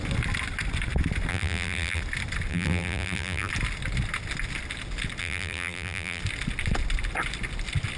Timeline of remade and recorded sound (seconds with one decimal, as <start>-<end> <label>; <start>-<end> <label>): 0.0-1.3 recorded; 1.3-2.0 remade; 2.0-2.5 recorded; 2.5-3.5 remade; 3.5-5.2 recorded; 5.2-6.2 remade; 6.2-8.0 recorded